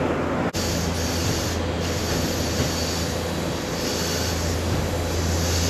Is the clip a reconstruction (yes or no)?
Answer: no